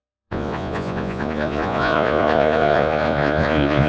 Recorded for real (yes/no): no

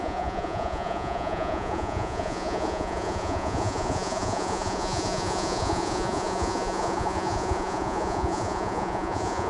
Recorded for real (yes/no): no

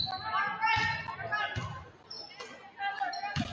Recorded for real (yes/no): yes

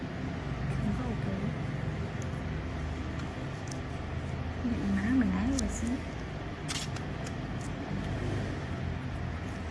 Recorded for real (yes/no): yes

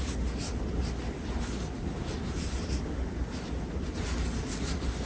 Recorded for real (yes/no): yes